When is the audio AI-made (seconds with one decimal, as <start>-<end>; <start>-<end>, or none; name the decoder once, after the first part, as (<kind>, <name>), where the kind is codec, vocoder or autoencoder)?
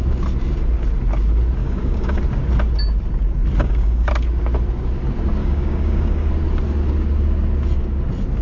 1.6-2.2 (codec, DAC); 3.6-4.1; 5.4-6.3